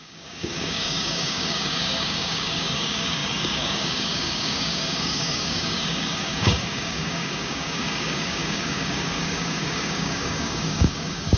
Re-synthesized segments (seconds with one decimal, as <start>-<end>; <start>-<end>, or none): 0.0-11.4

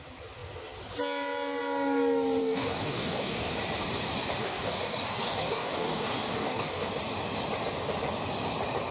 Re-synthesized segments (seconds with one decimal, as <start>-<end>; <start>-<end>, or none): 2.4-3.5; 4.4-6.9

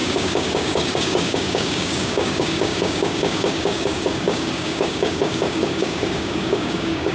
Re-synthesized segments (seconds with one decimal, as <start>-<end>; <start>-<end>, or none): 0.0-7.1